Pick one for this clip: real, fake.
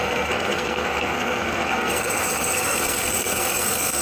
fake